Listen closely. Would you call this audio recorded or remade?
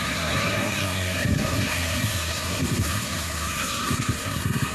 remade